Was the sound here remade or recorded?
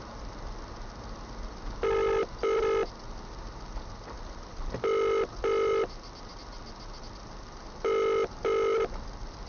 recorded